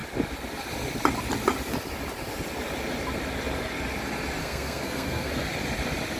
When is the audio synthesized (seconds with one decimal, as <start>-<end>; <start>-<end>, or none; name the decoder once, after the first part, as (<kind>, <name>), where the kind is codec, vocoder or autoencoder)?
4.4-5.3 (codec, SNAC)